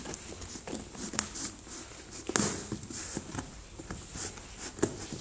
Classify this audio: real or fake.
real